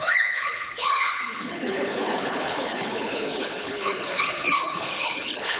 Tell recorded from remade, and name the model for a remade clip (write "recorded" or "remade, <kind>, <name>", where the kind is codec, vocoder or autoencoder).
remade, codec, HILCodec